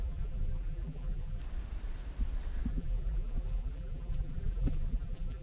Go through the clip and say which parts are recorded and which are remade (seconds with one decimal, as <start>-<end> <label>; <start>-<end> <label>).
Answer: 0.0-1.4 remade; 1.4-2.7 recorded; 2.7-5.4 remade